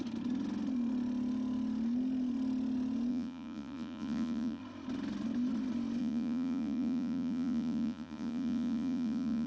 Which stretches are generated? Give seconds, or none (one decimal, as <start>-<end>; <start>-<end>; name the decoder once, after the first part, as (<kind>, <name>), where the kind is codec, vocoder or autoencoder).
3.1-4.6 (vocoder, Vocos); 6.0-9.5

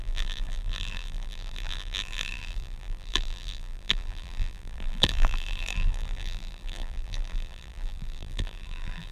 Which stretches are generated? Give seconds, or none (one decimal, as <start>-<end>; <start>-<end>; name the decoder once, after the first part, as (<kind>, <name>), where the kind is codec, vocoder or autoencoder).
0.0-9.1 (vocoder, BigVGAN v2)